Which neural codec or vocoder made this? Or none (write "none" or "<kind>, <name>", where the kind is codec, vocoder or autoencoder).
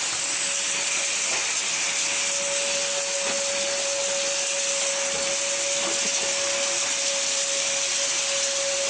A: none